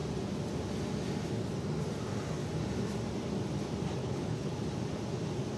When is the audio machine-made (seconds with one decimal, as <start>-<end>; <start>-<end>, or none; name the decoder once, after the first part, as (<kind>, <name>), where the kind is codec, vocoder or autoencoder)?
4.0-4.5 (codec, HILCodec)